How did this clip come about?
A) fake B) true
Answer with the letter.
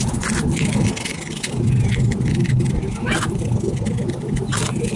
B